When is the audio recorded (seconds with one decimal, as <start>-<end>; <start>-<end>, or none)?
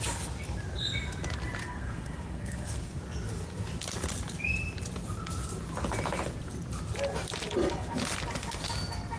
0.0-1.6; 3.0-9.2